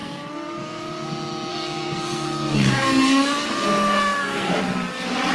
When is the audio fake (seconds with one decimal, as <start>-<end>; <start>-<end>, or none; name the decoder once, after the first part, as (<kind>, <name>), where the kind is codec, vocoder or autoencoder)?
0.0-0.8 (codec, SNAC); 1.5-4.6